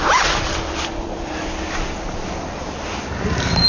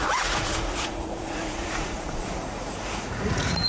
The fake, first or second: second